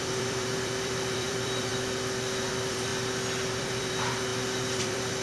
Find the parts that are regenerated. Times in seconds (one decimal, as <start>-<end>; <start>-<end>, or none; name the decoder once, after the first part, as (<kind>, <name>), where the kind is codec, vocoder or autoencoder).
0.0-1.7 (vocoder, BigVGAN v2); 2.5-2.9; 3.5-5.2